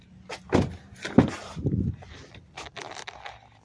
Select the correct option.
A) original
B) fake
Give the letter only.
B